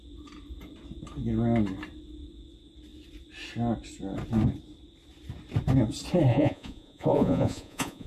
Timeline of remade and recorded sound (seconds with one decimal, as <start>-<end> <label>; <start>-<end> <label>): 0.0-6.3 recorded; 6.3-8.1 remade